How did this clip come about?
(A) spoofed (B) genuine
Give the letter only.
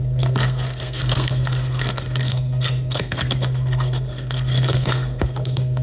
A